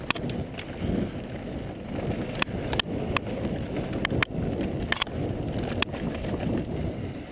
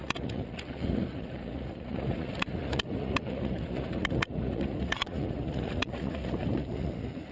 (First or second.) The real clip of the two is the first